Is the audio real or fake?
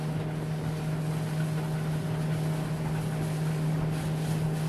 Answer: real